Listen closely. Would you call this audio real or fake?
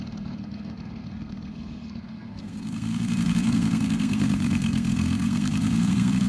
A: fake